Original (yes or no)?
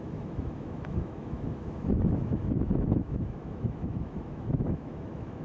no